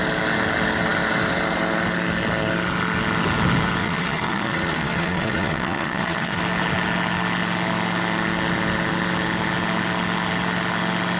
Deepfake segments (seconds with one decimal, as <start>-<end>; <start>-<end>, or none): 3.8-6.4